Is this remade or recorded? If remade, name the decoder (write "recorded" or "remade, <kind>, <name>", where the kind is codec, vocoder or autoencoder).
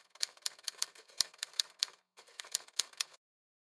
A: remade, codec, SNAC